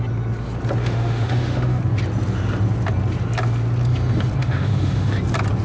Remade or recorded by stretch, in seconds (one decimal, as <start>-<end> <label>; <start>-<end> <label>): 0.0-0.8 recorded; 0.8-1.8 remade; 1.8-4.4 recorded; 4.4-5.1 remade; 5.1-5.6 recorded